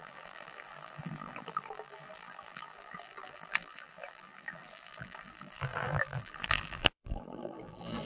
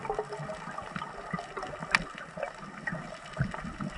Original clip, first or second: second